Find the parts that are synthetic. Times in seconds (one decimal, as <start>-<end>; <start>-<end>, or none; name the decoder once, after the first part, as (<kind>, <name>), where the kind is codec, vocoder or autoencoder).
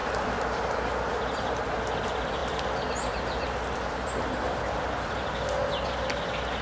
0.0-1.5 (vocoder, BigVGAN v2); 2.4-5.4